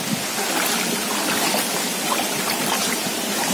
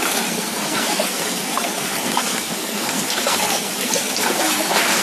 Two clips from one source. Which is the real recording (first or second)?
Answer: first